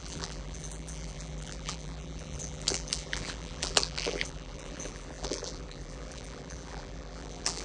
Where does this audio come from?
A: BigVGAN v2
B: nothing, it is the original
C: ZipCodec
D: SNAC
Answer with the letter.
A